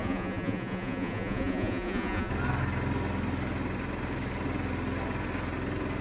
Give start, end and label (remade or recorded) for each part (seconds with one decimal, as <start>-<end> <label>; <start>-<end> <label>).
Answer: 0.0-2.3 remade; 2.3-6.0 recorded